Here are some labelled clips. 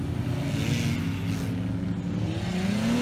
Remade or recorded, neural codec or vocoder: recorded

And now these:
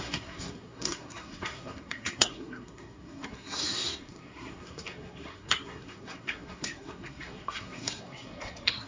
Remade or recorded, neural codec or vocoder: remade, codec, SNAC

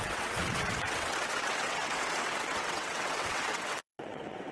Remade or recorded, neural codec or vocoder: remade, vocoder, WaveNeXt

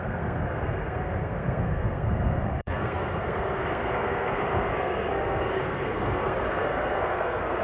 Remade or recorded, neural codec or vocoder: remade, codec, SNAC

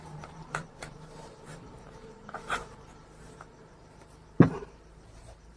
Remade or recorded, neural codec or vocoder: remade, vocoder, BigVGAN v2